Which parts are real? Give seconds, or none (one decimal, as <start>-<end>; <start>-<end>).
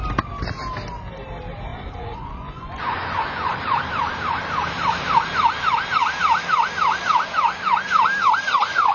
0.0-1.7; 3.6-8.9